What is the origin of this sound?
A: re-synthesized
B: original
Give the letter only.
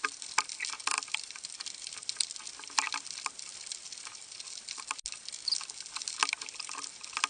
B